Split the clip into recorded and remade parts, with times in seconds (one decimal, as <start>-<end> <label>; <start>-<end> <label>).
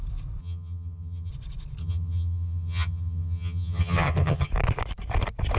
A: 0.0-0.4 recorded; 0.4-1.3 remade; 1.3-1.8 recorded; 1.8-4.5 remade; 4.5-5.6 recorded